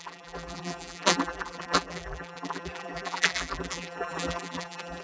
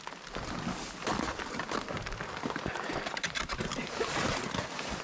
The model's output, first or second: first